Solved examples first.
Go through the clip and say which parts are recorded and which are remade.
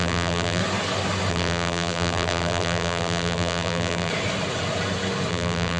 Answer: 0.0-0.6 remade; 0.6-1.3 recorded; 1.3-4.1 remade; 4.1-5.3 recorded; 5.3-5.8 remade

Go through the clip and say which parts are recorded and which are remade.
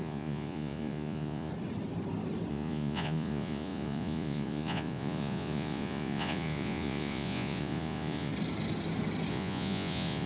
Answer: 0.0-1.5 remade; 1.5-2.5 recorded; 2.5-8.3 remade; 8.3-9.3 recorded; 9.3-10.3 remade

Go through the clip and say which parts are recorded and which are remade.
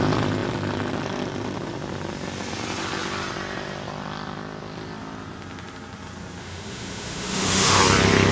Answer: 0.0-6.4 recorded; 6.4-7.8 remade; 7.8-8.3 recorded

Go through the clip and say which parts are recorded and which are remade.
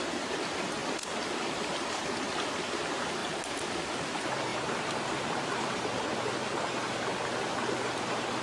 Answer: 0.0-3.2 recorded; 3.2-3.7 remade; 3.7-4.5 recorded; 4.5-5.6 remade; 5.6-8.4 recorded